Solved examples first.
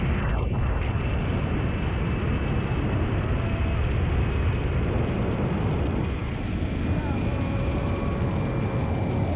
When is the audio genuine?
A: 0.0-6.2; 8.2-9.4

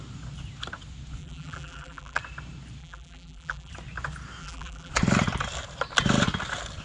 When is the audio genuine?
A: 0.0-1.2; 2.2-2.8; 3.7-4.4; 4.9-6.8

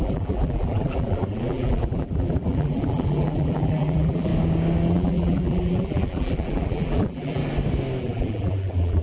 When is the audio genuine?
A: 4.3-4.9; 7.4-8.0

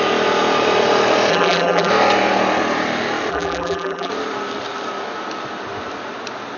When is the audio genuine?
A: 0.0-1.3; 1.9-3.3; 4.1-6.6

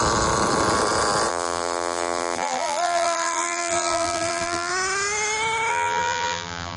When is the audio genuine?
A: 0.0-1.3; 4.7-5.7

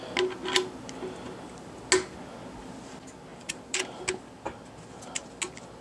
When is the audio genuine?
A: 0.0-3.3; 4.0-5.8